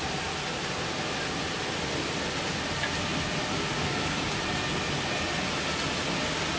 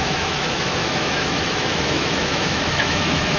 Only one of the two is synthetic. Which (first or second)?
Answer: second